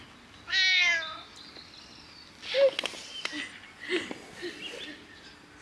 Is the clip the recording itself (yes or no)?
yes